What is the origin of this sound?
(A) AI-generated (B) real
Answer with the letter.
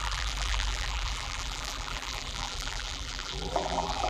A